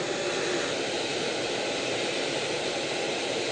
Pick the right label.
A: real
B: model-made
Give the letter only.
A